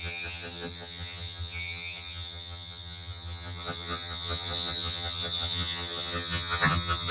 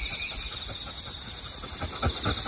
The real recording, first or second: second